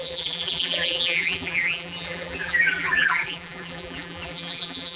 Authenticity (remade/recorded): remade